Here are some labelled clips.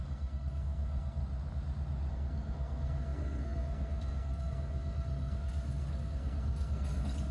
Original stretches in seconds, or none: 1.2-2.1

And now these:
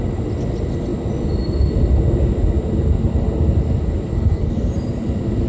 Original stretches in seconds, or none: 0.0-4.1; 4.7-5.5

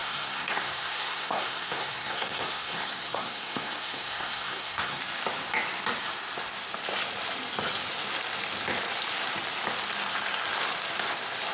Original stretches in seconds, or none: 5.0-11.5